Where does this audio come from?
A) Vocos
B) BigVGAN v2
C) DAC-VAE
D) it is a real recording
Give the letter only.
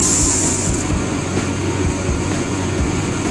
A